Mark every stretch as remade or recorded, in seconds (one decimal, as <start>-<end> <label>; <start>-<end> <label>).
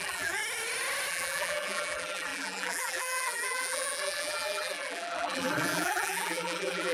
0.0-0.4 remade; 0.4-1.1 recorded; 1.1-6.9 remade